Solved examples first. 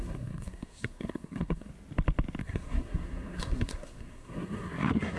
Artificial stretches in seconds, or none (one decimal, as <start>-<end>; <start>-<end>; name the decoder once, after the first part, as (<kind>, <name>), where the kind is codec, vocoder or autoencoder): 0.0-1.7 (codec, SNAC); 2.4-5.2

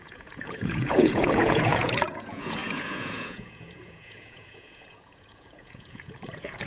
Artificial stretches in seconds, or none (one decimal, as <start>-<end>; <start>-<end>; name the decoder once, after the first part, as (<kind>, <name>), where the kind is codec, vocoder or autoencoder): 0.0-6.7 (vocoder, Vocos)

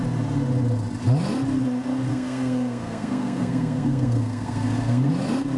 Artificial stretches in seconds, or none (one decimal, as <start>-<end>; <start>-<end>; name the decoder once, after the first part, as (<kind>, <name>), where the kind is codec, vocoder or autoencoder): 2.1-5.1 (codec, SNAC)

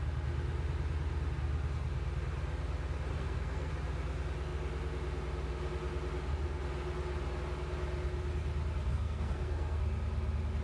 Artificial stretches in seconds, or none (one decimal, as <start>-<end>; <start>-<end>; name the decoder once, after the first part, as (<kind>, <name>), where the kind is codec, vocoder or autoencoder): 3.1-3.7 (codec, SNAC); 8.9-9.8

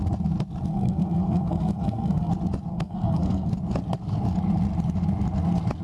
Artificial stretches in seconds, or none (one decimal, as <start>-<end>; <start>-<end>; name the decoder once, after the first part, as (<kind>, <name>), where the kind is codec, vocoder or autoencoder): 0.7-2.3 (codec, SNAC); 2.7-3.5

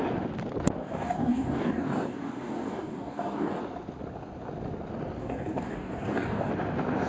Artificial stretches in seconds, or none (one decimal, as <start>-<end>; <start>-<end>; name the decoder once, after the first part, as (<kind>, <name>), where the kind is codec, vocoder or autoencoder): 0.8-3.6 (codec, DAC); 5.2-6.5

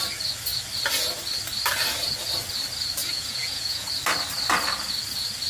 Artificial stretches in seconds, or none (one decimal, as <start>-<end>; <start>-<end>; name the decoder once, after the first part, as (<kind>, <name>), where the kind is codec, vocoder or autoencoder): 3.0-3.9 (vocoder, Vocos)